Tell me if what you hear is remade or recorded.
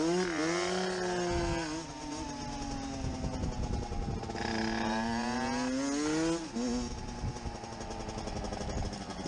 recorded